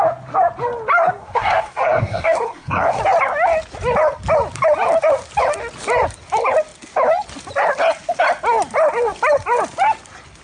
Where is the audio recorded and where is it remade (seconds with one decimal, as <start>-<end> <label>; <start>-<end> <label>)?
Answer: 0.0-1.2 recorded; 1.2-3.0 remade; 3.0-10.4 recorded